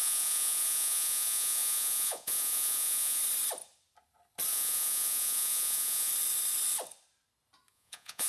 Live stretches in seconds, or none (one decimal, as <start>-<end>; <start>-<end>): 3.2-4.5; 6.1-7.7